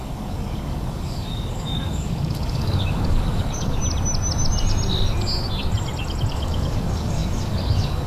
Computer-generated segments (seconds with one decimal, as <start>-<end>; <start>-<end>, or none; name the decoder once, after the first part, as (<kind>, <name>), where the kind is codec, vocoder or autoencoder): 0.0-3.8 (codec, DAC); 6.3-8.1